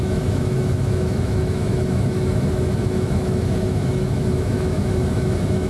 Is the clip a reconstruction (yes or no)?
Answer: yes